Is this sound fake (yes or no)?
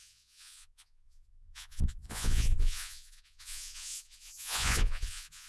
yes